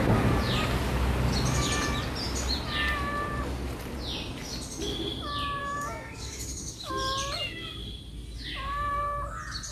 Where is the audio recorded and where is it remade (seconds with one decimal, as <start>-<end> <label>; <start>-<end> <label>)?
0.0-5.6 recorded; 5.6-6.9 remade; 6.9-9.7 recorded